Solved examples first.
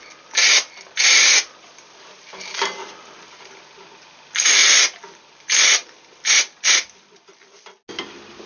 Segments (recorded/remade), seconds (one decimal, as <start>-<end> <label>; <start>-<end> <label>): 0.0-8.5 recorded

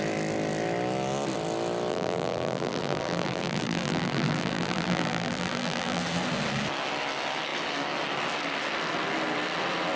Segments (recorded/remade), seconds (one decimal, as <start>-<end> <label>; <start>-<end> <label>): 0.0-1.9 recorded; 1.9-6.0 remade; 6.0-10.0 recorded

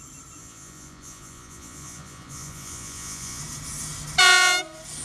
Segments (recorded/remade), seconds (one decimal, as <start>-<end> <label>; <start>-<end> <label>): 0.0-0.4 recorded; 0.4-3.4 remade; 3.4-5.0 recorded